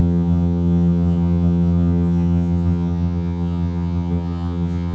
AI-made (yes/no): yes